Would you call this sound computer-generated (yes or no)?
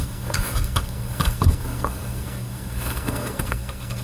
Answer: yes